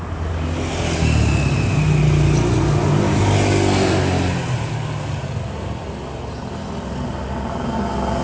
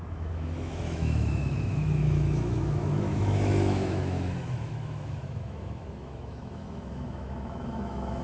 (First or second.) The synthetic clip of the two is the second